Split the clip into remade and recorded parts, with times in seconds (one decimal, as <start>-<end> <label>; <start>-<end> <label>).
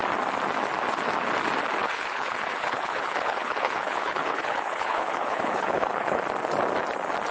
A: 0.0-1.8 recorded; 1.8-6.2 remade; 6.2-7.3 recorded